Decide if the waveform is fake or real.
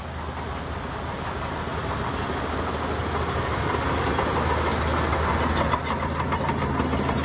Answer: real